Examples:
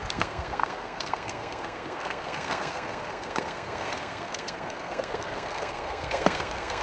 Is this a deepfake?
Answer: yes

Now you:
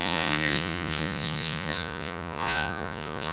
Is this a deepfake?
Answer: yes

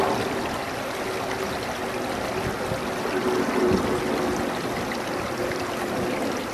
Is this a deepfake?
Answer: no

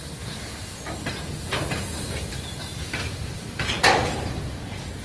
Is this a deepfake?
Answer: no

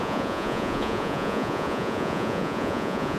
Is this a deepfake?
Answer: yes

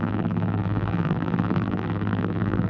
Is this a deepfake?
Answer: yes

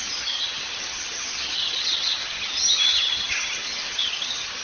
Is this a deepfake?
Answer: yes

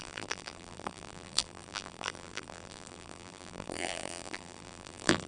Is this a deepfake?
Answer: yes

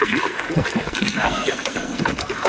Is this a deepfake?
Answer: yes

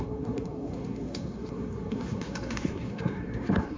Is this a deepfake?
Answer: yes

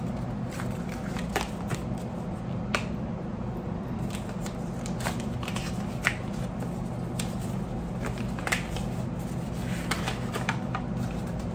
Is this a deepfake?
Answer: no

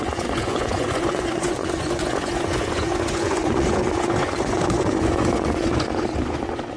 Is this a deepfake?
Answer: yes